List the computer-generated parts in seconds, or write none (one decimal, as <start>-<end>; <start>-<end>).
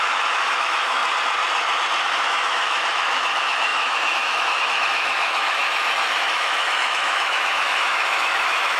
0.0-1.0; 2.0-8.8